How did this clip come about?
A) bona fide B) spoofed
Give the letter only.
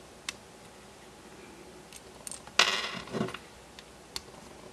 A